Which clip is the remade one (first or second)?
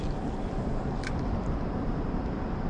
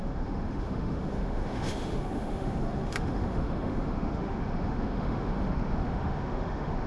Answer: second